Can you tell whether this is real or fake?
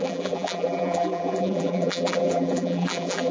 fake